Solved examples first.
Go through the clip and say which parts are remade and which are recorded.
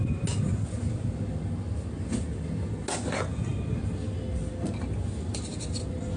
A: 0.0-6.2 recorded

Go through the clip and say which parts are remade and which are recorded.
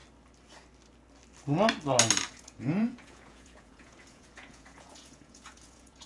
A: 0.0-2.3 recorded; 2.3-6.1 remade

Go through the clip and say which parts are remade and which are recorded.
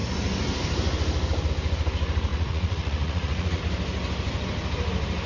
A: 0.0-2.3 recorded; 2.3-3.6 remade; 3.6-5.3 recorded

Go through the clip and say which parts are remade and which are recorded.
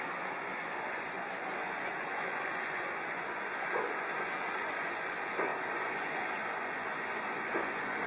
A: 0.0-8.1 remade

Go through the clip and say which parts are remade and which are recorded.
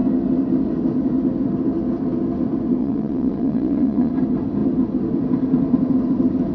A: 0.0-2.8 recorded; 2.8-4.1 remade; 4.1-6.5 recorded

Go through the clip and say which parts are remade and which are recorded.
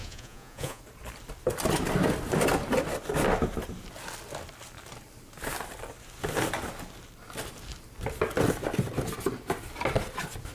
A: 0.0-0.8 remade; 0.8-10.5 recorded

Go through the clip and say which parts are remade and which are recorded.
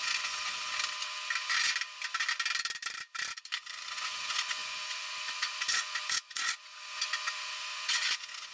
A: 0.0-0.7 remade; 0.7-3.9 recorded; 3.9-8.5 remade